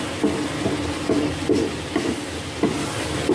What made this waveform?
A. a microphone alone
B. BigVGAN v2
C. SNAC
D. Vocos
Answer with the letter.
A